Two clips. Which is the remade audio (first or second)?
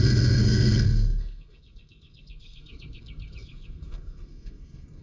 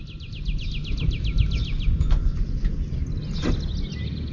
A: first